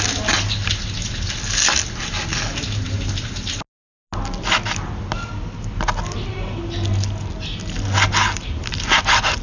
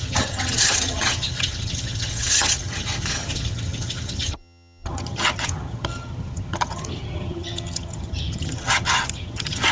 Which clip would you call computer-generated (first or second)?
second